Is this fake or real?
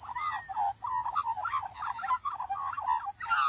real